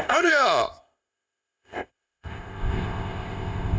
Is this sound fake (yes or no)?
yes